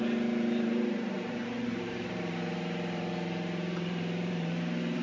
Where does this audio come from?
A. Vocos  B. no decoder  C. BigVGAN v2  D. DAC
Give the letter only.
C